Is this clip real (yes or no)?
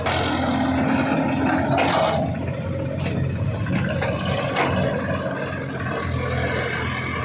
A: yes